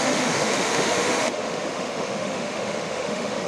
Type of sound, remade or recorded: remade